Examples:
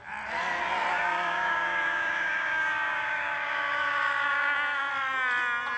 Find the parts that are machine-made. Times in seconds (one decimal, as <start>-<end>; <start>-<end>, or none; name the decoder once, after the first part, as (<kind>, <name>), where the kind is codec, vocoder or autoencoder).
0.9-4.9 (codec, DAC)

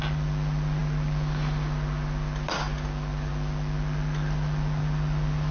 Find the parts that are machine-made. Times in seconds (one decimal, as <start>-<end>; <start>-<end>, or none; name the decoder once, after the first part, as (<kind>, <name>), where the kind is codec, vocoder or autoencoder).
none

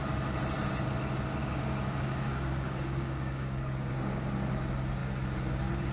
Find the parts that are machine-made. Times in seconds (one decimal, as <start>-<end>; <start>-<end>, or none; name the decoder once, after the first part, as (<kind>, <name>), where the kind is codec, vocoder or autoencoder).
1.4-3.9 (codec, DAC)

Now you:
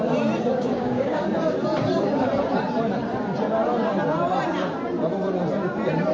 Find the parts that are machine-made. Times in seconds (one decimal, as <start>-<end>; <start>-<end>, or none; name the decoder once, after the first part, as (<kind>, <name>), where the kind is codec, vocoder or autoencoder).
0.5-1.2 (codec, DAC)